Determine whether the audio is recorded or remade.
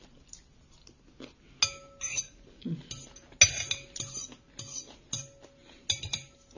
recorded